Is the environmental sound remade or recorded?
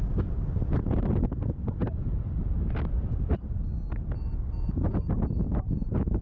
recorded